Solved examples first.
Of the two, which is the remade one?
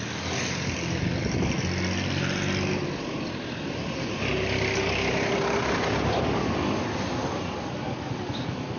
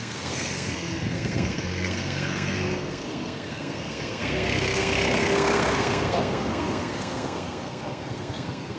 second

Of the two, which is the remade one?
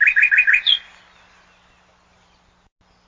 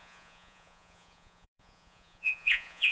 second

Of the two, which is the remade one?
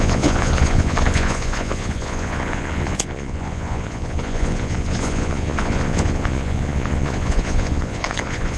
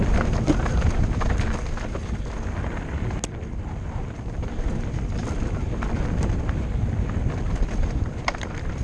first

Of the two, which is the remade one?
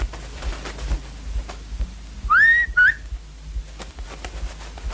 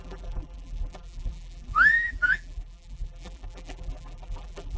second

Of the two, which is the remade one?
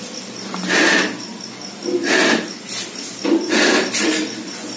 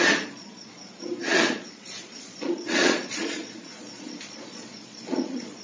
second